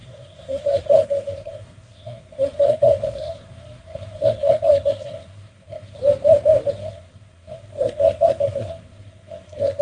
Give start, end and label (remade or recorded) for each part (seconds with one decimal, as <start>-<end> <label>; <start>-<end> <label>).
0.0-6.0 remade; 6.0-6.7 recorded; 6.7-9.8 remade